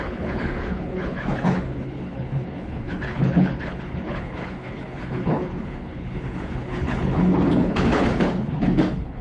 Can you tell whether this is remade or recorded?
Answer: remade